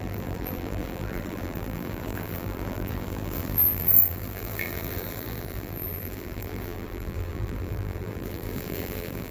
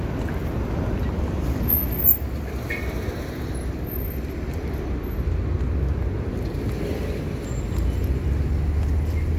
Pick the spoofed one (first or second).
first